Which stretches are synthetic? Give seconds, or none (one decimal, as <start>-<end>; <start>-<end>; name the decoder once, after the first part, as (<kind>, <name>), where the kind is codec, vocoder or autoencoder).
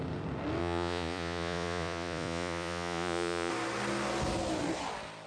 0.6-3.5 (vocoder, Vocos)